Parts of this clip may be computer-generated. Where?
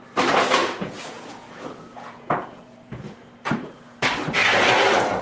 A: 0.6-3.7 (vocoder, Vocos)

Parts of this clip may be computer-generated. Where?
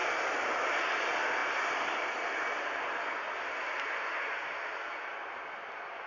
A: none